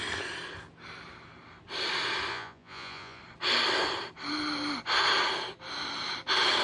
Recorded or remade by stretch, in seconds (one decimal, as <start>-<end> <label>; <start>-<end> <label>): 0.0-2.3 recorded; 2.3-3.2 remade; 3.2-6.6 recorded